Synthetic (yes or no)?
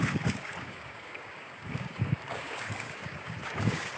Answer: yes